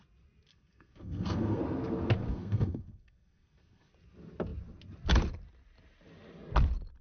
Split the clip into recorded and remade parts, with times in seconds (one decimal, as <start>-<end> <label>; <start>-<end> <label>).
0.0-0.5 recorded; 0.5-1.6 remade; 1.6-2.3 recorded; 2.3-3.9 remade; 3.9-7.0 recorded